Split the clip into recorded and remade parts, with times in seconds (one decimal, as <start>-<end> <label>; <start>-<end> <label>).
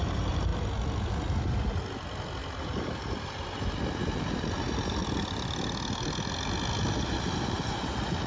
0.0-0.5 remade; 0.5-2.6 recorded; 2.6-5.0 remade; 5.0-6.8 recorded; 6.8-8.3 remade